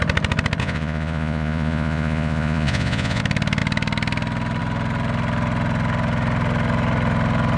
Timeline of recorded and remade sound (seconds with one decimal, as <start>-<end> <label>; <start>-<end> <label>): 0.0-0.6 recorded; 0.6-3.2 remade; 3.2-7.6 recorded